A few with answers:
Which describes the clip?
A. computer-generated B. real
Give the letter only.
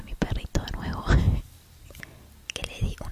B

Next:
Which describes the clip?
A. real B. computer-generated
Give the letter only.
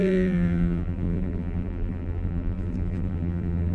B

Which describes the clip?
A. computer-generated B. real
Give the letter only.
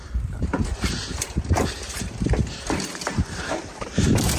A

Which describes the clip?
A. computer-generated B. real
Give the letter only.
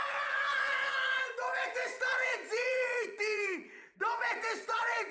A